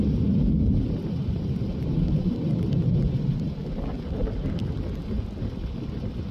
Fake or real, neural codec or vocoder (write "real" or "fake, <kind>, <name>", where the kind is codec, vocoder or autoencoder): real